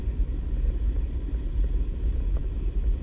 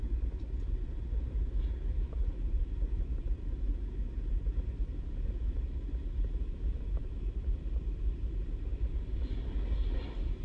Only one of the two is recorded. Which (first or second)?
first